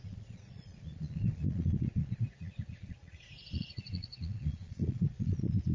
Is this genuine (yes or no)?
no